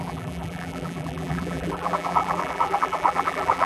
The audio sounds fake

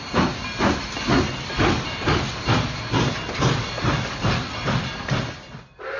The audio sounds real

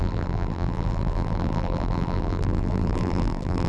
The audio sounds fake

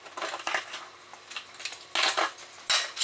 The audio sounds real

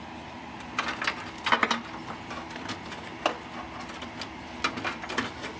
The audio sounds real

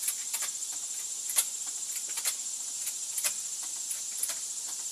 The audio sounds real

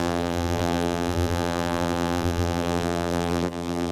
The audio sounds fake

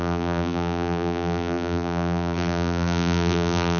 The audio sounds fake